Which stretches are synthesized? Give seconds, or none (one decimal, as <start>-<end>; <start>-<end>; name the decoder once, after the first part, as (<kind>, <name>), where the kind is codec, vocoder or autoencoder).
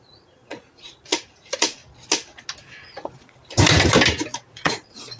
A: 0.0-1.8 (vocoder, Vocos); 2.6-3.4; 4.5-5.2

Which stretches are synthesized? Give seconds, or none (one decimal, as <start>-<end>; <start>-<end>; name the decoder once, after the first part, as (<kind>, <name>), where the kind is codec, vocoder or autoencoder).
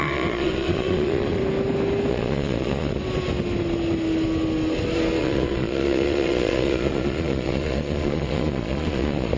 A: 0.0-1.4 (vocoder, Vocos); 2.1-3.0; 5.2-9.4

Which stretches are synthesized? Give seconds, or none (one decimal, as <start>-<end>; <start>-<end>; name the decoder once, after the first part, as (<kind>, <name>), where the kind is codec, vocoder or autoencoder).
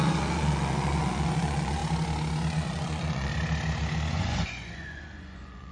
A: 0.0-1.8 (vocoder, Vocos); 2.5-3.3; 4.1-5.7